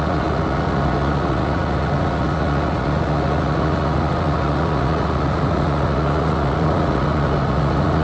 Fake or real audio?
fake